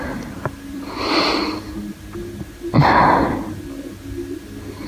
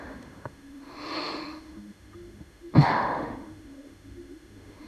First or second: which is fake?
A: second